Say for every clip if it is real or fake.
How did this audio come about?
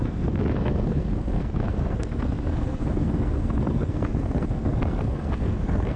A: fake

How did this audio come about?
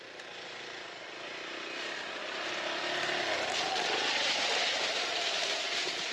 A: real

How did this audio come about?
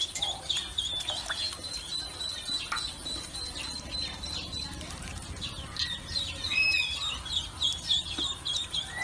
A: real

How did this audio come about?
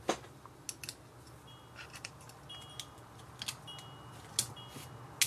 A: real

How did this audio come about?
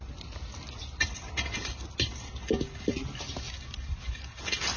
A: real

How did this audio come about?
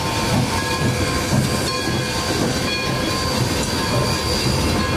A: real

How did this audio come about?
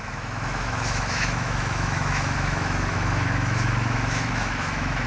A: fake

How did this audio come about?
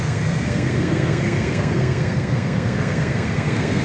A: fake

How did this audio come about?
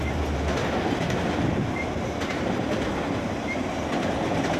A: real